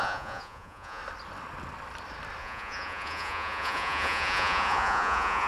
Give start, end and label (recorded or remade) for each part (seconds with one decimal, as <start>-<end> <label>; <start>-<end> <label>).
0.0-1.0 remade; 1.0-2.4 recorded; 2.4-5.5 remade